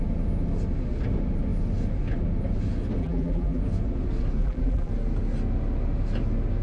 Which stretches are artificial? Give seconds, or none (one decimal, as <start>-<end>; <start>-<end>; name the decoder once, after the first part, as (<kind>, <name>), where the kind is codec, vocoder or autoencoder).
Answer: 3.0-3.6 (vocoder, BigVGAN v2); 4.4-4.9